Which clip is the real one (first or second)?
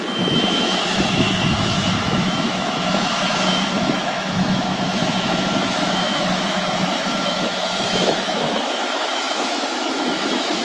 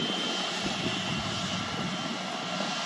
second